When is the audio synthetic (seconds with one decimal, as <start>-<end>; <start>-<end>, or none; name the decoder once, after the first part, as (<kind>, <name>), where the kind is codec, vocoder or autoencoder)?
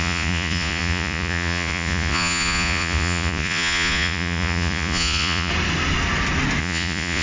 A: 0.0-5.5 (vocoder, Vocos); 6.6-7.2